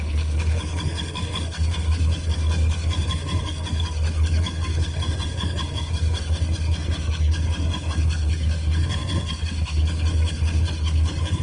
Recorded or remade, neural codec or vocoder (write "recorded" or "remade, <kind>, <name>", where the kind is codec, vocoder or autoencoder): remade, codec, SNAC